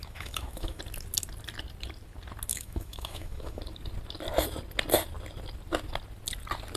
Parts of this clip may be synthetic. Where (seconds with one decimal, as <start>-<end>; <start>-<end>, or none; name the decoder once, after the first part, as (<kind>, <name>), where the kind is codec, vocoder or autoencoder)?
0.0-0.8 (autoencoder, DAC-VAE); 2.5-3.6